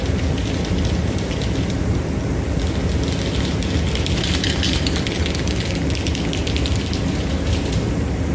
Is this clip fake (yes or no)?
no